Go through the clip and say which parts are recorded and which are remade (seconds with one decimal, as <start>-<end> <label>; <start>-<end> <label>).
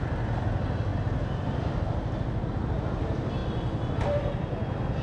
0.0-5.0 recorded